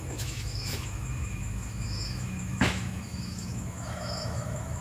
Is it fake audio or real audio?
fake